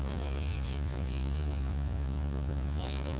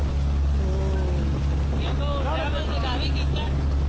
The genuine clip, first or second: second